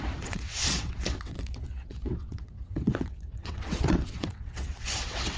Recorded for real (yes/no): no